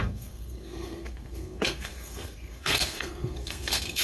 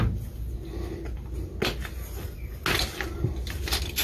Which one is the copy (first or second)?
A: first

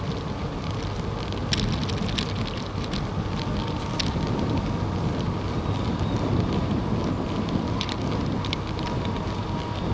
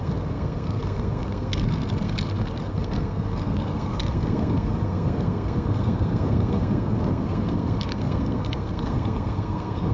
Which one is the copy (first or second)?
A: second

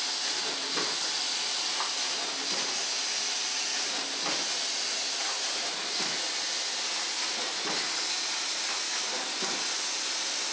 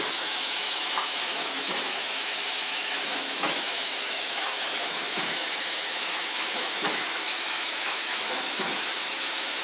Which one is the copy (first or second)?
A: second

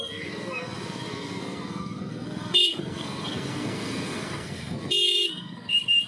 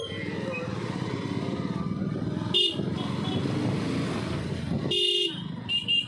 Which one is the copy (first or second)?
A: first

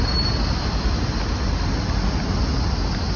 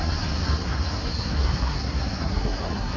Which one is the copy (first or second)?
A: second